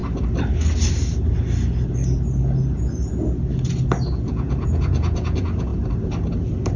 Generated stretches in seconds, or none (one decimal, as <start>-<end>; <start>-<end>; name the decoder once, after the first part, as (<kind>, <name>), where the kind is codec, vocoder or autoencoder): 4.1-5.7 (vocoder, Vocos)